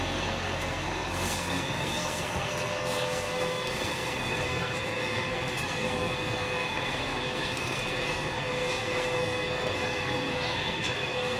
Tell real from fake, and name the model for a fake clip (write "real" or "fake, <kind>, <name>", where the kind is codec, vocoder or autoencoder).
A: fake, codec, SNAC